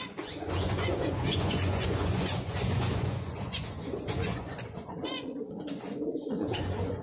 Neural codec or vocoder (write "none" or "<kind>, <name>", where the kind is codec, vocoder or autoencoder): vocoder, Vocos